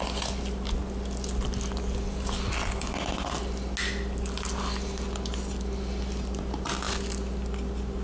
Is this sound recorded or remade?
recorded